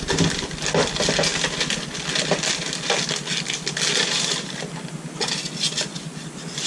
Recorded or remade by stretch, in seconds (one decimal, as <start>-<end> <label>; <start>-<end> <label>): 0.0-6.7 recorded